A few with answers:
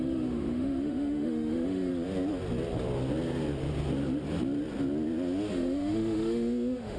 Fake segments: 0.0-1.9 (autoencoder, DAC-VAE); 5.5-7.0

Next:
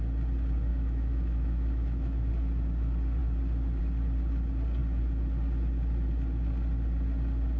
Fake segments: 0.7-2.3 (autoencoder, DAC-VAE)

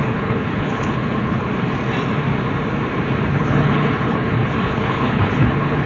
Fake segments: 0.0-1.5 (codec, HILCodec); 3.3-5.9

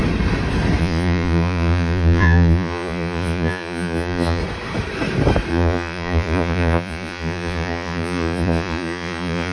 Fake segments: 0.8-4.4 (vocoder, Vocos); 5.5-9.5

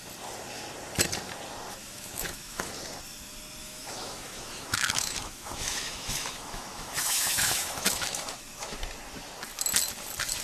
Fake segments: 1.8-2.7 (autoencoder, DAC-VAE); 3.6-8.8

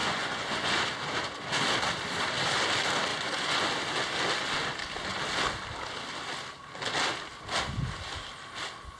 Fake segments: 0.0-0.7 (vocoder, Vocos); 3.1-3.7

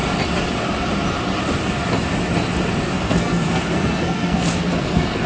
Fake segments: 2.8-5.3 (codec, SNAC)